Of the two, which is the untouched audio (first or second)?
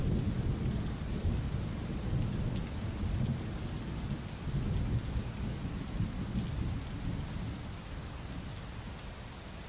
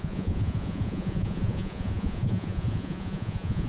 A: first